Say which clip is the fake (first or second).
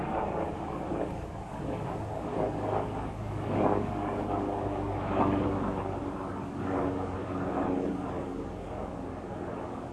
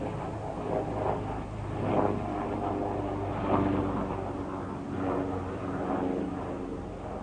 first